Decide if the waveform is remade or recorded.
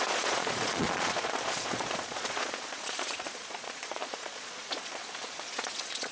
remade